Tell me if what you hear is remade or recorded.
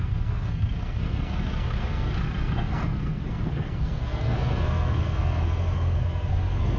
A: remade